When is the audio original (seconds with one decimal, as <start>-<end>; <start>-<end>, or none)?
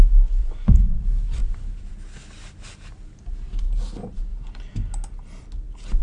0.0-0.4; 1.0-6.0